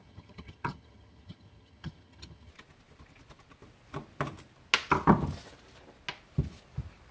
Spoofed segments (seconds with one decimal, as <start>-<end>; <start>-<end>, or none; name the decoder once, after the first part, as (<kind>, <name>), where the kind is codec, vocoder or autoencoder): 0.0-2.5 (vocoder, HiFi-GAN)